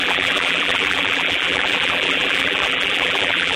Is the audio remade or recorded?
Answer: remade